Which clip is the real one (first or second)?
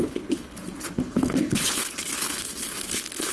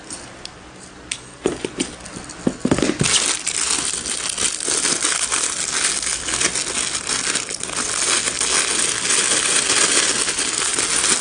second